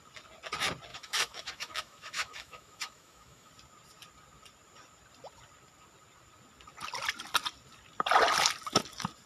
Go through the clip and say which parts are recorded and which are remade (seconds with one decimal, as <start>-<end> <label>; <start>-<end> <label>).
0.0-0.9 recorded; 0.9-3.5 remade; 3.5-9.3 recorded